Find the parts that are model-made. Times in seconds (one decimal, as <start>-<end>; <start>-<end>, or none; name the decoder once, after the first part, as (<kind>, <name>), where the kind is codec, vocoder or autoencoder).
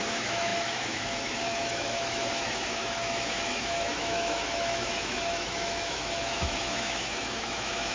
0.0-7.9 (autoencoder, DAC-VAE)